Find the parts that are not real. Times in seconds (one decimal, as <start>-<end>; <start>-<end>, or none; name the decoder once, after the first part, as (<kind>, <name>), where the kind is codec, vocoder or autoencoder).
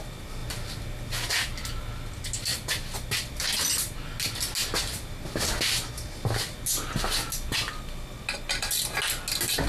none